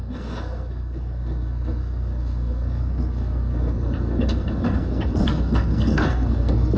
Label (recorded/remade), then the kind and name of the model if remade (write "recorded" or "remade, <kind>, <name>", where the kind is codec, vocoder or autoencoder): remade, codec, SNAC